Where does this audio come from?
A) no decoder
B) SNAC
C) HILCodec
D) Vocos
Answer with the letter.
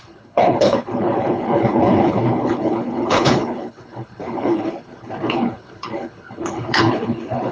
C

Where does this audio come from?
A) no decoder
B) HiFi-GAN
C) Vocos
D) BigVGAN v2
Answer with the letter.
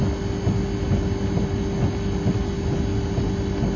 A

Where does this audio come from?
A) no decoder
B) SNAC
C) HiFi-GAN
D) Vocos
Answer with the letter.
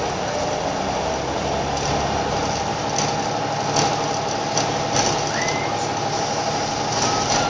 A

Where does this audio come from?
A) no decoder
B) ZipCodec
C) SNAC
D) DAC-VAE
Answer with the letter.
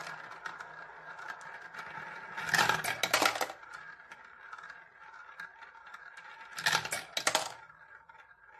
A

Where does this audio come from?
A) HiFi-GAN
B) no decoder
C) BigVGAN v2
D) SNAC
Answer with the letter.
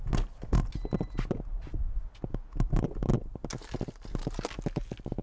B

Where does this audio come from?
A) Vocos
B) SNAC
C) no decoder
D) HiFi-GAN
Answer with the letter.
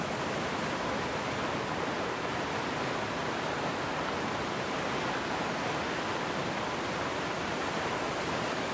C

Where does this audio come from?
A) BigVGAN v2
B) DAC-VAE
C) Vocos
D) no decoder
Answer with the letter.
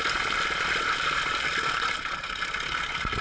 D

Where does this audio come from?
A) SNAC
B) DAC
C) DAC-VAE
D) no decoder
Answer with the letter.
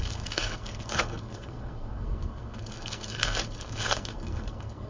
A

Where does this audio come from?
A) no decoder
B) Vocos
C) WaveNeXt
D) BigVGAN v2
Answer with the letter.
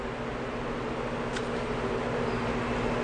A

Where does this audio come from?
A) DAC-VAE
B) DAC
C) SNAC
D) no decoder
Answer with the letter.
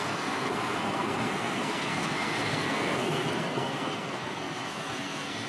C